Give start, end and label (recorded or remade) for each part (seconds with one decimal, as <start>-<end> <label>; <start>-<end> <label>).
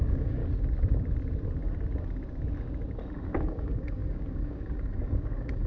0.0-0.4 remade; 0.4-3.3 recorded; 3.3-5.7 remade